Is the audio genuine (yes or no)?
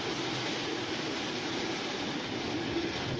yes